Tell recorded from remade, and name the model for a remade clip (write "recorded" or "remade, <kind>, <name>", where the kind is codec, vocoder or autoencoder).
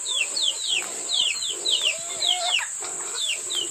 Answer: recorded